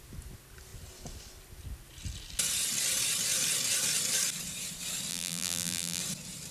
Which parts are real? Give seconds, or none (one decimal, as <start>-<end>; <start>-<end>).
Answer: 0.0-5.1; 6.0-6.5